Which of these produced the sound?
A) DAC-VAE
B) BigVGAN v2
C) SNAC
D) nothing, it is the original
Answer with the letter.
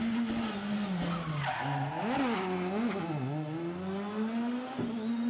D